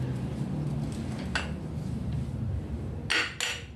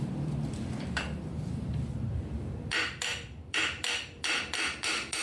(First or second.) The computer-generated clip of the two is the second